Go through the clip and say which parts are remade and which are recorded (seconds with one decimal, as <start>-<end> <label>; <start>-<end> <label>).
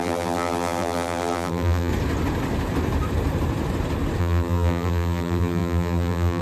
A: 0.0-1.9 remade; 1.9-4.2 recorded; 4.2-6.4 remade